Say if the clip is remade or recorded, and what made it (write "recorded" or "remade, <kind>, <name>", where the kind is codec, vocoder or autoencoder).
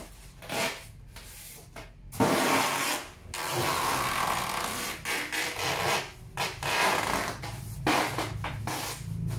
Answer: recorded